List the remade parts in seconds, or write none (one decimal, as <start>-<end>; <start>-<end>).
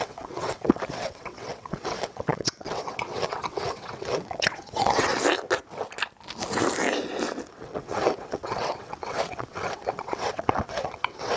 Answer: 0.0-5.1; 7.5-11.4